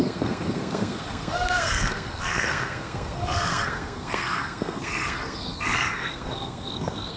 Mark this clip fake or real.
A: fake